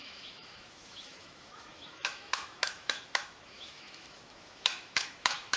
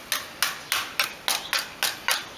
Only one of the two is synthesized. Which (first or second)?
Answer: first